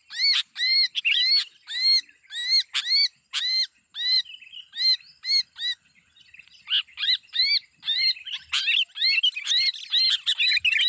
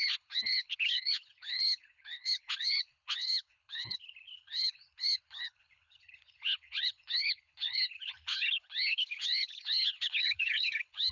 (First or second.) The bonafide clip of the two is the first